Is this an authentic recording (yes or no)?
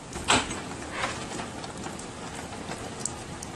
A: yes